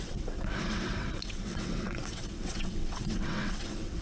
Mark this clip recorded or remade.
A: remade